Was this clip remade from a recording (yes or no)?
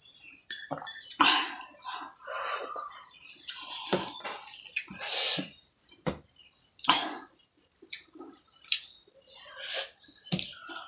yes